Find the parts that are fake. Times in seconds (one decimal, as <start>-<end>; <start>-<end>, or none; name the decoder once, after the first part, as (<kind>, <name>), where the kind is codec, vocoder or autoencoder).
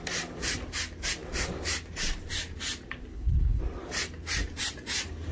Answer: 3.1-3.6 (codec, HILCodec)